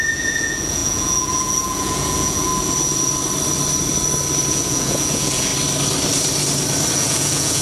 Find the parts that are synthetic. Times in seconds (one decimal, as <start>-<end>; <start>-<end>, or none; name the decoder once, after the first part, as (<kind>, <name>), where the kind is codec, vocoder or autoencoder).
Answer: 0.0-2.5 (vocoder, Vocos); 4.5-5.5; 6.9-7.6